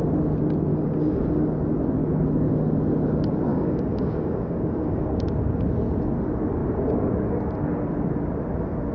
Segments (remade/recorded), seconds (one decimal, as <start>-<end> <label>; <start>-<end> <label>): 0.0-0.7 recorded; 0.7-1.5 remade; 1.5-3.5 recorded; 3.5-5.0 remade; 5.0-8.9 recorded